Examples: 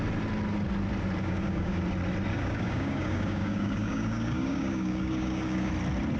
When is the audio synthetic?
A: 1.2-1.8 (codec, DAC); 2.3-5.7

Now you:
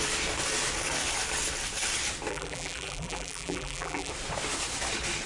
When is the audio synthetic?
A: 2.3-4.1 (vocoder, BigVGAN v2)

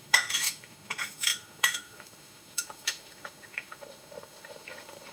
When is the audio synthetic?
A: 0.0-5.1 (autoencoder, DAC-VAE)